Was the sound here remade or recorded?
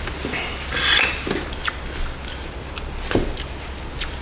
recorded